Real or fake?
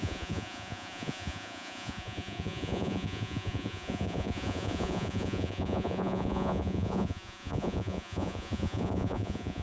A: fake